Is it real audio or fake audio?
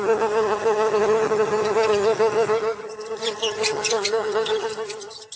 fake